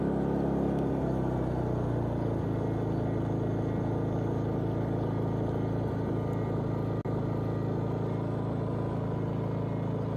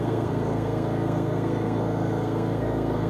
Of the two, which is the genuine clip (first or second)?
first